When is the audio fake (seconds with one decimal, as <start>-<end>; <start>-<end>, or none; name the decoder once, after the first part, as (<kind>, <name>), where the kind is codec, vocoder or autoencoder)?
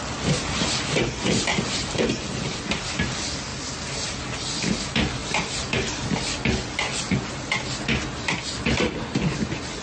1.5-2.6 (vocoder, BigVGAN v2)